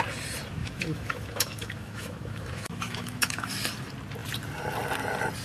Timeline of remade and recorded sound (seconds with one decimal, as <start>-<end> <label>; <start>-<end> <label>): 0.0-0.6 recorded; 0.6-3.5 remade; 3.5-5.4 recorded